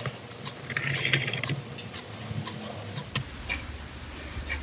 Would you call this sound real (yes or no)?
yes